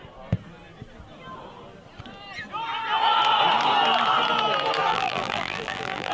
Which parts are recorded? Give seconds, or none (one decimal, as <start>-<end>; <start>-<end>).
0.0-4.9